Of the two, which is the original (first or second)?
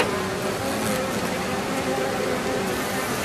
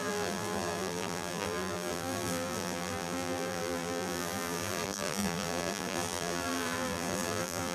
first